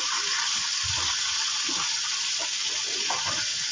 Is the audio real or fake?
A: real